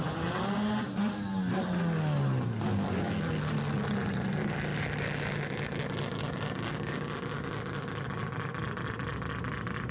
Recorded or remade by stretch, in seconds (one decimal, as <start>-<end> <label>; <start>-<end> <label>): 0.0-9.9 recorded